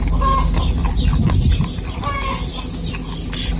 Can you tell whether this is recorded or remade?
recorded